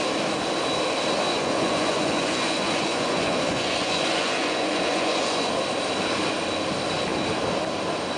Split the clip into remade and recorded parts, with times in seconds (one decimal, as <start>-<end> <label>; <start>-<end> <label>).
0.0-1.3 recorded; 1.3-5.5 remade; 5.5-8.2 recorded